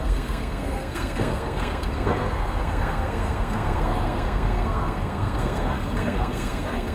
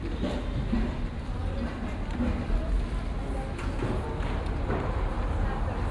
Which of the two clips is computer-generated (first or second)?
first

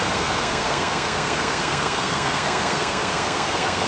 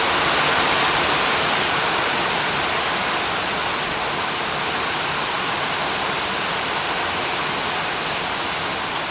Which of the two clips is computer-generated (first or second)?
first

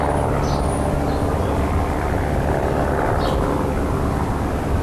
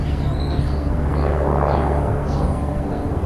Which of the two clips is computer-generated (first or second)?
second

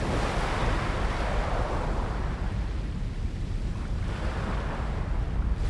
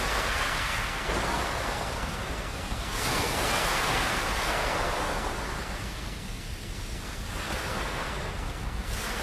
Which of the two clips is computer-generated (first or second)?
second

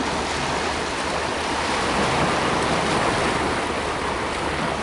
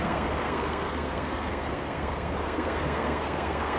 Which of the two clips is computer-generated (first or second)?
second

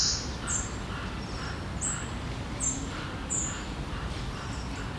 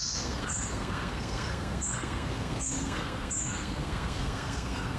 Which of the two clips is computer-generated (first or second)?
second